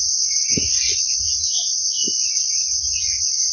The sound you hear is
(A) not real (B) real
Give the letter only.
A